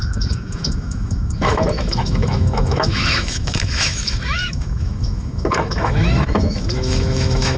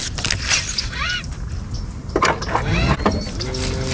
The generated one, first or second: first